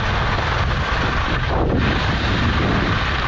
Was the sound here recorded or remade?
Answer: recorded